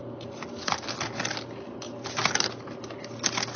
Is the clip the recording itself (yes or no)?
yes